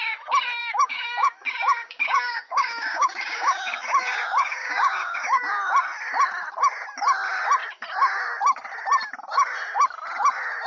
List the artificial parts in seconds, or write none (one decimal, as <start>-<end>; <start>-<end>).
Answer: 0.6-5.4